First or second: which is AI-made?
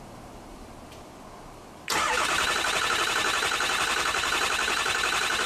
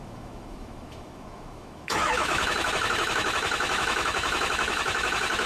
second